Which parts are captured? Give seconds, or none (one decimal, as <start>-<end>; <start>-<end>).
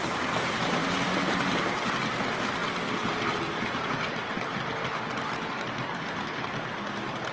0.0-7.3